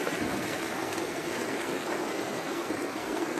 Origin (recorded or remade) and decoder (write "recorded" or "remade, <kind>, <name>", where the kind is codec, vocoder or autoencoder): remade, codec, SNAC